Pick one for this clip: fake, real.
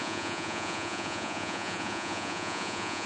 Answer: fake